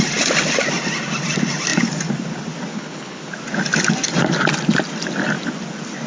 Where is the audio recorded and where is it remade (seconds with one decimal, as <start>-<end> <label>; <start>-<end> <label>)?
0.0-2.7 recorded; 2.7-3.2 remade; 3.2-6.1 recorded